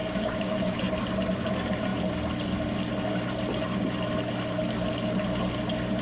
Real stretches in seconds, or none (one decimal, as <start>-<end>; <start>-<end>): 0.9-6.0